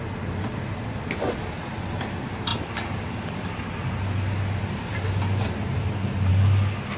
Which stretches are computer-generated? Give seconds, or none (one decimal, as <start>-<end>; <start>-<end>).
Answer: 0.0-7.0